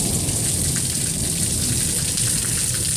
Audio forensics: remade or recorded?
recorded